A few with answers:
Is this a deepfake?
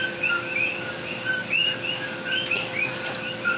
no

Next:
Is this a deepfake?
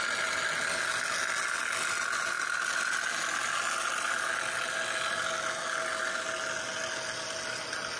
no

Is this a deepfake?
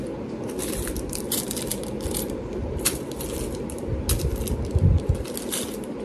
no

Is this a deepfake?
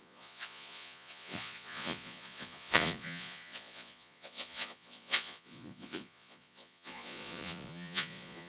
yes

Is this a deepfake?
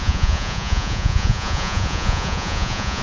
yes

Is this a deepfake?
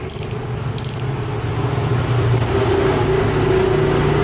no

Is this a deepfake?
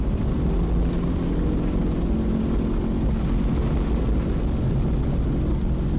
no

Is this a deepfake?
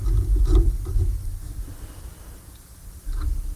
no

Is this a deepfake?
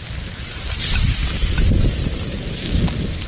no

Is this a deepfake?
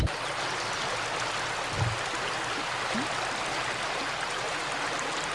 no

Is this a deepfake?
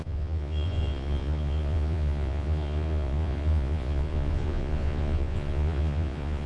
yes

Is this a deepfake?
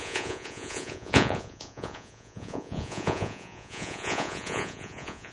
yes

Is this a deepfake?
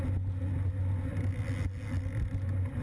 no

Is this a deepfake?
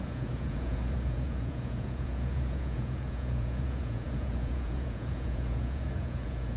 yes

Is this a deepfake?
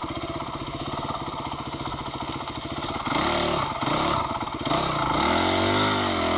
no